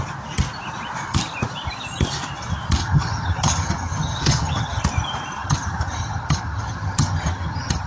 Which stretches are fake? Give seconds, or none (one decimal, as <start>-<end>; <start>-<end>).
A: 2.8-4.8; 5.4-7.9

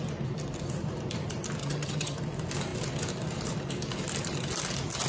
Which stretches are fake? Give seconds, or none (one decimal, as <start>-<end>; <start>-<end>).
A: 1.6-2.2

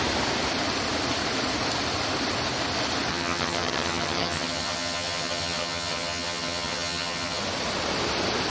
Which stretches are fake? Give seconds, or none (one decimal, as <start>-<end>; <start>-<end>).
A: 3.1-7.4

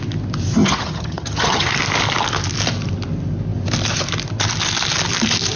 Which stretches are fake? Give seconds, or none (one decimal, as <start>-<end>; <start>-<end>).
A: 0.6-1.7

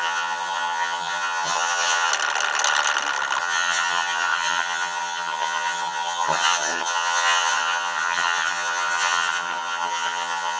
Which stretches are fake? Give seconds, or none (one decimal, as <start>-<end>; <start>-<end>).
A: 0.0-2.1; 3.4-10.6

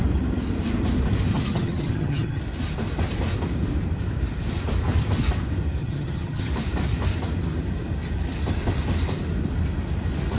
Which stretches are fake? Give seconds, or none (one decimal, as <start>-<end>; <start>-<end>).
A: 1.3-2.4; 5.8-6.5

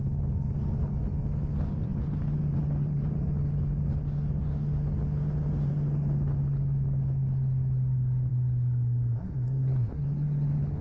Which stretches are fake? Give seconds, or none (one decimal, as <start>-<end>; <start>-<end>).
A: none

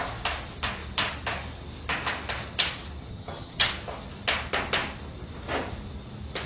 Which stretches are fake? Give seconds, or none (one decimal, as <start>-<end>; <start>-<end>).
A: 3.1-3.7